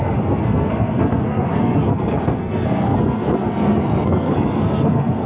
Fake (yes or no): yes